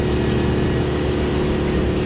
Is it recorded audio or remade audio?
recorded